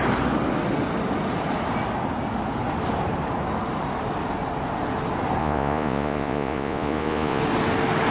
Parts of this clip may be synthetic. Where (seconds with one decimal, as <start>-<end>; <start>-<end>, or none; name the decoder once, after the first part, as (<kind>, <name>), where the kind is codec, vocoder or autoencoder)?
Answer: 5.4-7.4 (vocoder, Vocos)